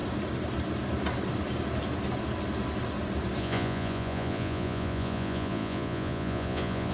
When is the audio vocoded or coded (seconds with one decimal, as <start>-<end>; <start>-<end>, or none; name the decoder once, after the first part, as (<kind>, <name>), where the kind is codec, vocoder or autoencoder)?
3.4-6.9 (vocoder, Vocos)